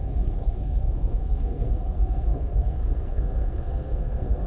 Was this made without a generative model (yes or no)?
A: no